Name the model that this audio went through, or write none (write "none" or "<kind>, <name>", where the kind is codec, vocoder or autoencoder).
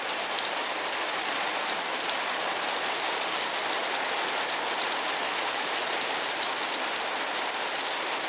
none